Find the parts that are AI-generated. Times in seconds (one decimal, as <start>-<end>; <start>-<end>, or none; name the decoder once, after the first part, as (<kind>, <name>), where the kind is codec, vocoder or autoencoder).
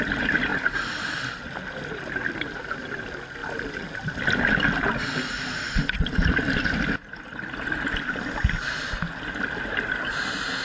none